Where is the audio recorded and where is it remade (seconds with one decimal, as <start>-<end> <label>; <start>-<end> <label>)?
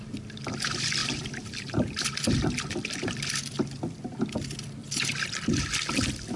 0.0-1.0 recorded; 1.0-3.2 remade; 3.2-4.8 recorded; 4.8-6.0 remade; 6.0-6.4 recorded